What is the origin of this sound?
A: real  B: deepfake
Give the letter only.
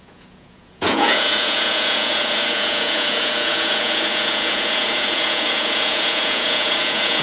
B